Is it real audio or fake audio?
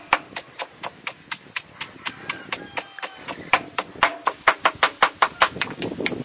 real